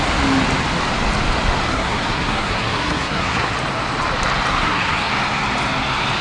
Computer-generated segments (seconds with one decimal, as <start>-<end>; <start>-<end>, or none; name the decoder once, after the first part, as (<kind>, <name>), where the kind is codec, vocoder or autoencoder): 1.7-3.5 (codec, SNAC); 4.5-5.1